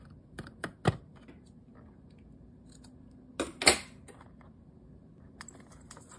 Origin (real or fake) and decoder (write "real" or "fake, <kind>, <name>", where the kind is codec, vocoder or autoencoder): real